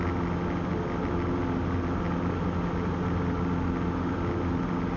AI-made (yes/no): no